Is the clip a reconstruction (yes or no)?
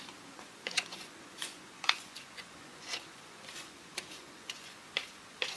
yes